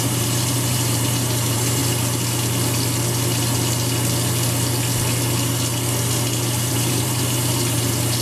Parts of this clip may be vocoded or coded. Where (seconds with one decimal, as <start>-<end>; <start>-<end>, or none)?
0.0-1.8; 6.7-8.2